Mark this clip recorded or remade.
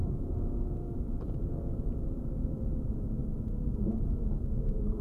remade